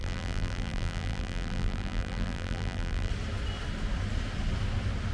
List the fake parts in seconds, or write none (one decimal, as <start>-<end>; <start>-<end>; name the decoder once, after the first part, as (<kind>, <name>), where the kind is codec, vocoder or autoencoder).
0.0-3.1 (vocoder, BigVGAN v2)